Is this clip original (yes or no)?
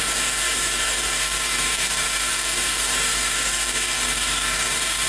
no